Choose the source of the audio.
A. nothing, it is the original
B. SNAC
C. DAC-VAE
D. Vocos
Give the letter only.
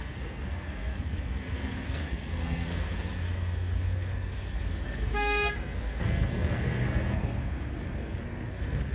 B